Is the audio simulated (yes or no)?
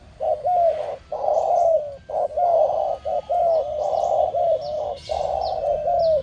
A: no